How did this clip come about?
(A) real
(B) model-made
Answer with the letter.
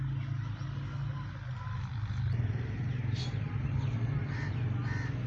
A